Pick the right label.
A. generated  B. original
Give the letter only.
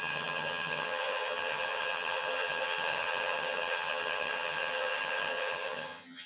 A